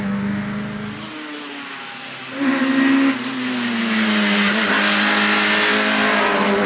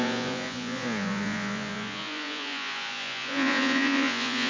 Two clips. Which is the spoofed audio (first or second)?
second